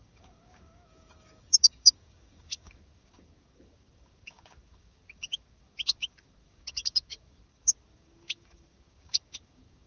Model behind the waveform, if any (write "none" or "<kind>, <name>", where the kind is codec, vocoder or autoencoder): codec, DAC